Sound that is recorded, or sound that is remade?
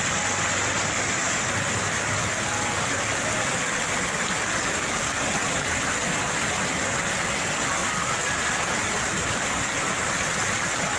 recorded